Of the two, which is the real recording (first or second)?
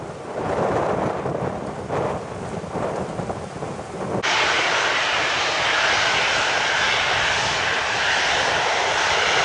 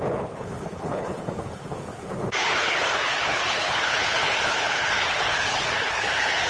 first